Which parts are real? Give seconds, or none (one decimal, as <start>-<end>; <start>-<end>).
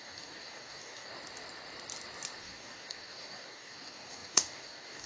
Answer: 1.1-2.4